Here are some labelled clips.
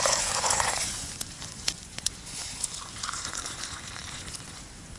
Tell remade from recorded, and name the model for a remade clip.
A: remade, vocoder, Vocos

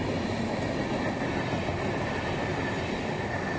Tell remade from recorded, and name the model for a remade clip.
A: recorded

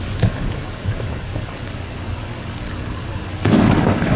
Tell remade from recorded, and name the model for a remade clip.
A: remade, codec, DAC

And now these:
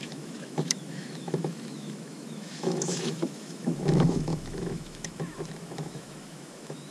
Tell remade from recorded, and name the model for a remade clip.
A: remade, autoencoder, DAC-VAE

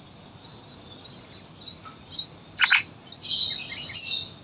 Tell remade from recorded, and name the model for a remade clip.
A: recorded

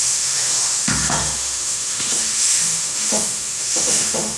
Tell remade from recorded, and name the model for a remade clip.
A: remade, autoencoder, DAC-VAE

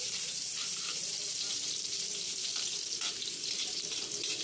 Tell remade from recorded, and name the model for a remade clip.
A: remade, vocoder, BigVGAN v2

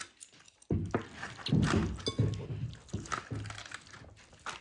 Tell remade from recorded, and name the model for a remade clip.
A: recorded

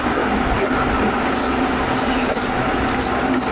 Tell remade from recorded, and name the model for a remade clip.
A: recorded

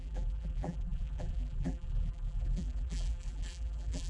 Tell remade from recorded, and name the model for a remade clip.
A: remade, vocoder, BigVGAN v2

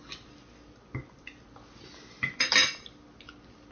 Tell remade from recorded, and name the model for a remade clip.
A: recorded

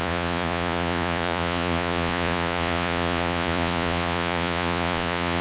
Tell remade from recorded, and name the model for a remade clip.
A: remade, vocoder, Vocos